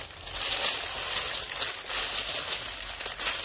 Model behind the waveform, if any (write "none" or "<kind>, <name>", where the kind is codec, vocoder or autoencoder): none